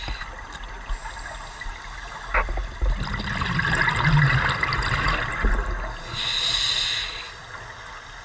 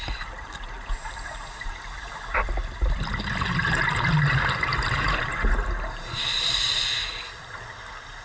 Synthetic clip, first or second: second